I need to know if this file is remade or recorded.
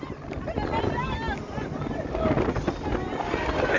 recorded